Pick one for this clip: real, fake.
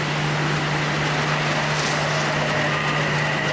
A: real